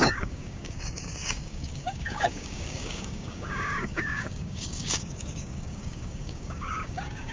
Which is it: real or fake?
fake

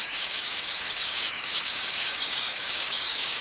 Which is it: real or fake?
fake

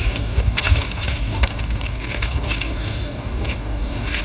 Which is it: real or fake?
fake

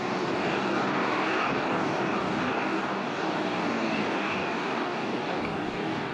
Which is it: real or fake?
fake